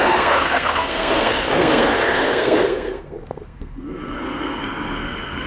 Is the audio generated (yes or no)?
yes